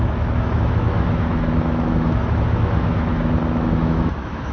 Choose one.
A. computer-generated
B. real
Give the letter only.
A